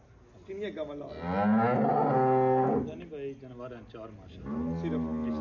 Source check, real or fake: real